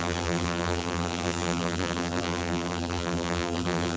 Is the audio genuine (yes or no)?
no